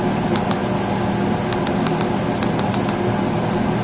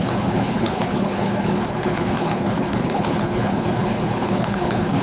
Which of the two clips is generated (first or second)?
second